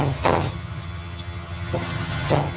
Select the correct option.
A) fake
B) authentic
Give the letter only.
A